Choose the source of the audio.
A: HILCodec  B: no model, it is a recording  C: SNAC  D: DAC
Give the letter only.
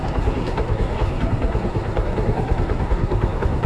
C